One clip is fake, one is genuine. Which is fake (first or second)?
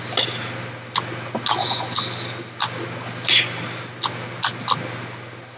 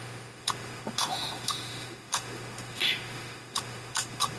second